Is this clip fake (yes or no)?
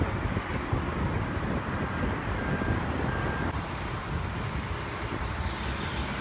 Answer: no